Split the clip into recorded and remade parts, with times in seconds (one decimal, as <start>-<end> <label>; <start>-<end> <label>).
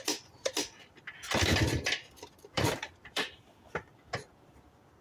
0.0-5.0 remade